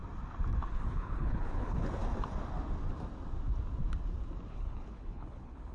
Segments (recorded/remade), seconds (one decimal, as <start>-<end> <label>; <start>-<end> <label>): 0.0-0.7 recorded; 0.7-2.0 remade; 2.0-4.5 recorded; 4.5-5.7 remade